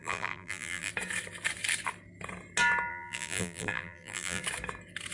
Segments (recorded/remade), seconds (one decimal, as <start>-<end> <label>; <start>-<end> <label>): 0.0-0.9 remade; 0.9-2.9 recorded; 2.9-4.4 remade; 4.4-5.1 recorded